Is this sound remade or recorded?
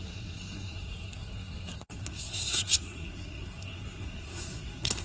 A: remade